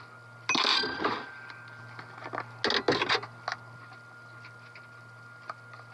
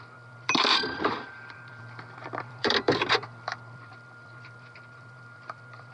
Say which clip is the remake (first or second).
second